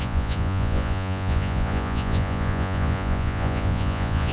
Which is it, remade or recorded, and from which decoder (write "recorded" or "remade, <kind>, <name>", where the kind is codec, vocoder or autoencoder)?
remade, vocoder, Vocos